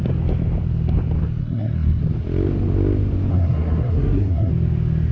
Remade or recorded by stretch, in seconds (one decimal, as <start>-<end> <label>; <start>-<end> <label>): 0.0-1.4 recorded; 1.4-2.0 remade; 2.0-3.3 recorded; 3.3-4.5 remade; 4.5-5.1 recorded